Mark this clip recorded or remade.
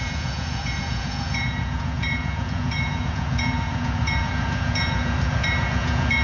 remade